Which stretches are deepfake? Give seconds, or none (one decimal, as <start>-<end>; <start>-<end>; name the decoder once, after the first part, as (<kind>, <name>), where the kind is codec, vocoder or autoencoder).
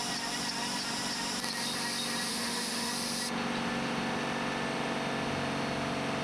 2.3-2.9 (autoencoder, DAC-VAE)